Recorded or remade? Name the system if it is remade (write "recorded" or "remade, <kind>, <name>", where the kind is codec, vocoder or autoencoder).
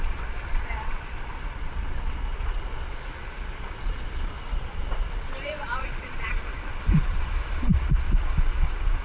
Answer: remade, vocoder, Vocos